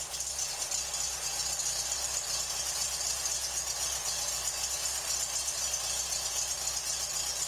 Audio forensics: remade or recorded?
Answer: recorded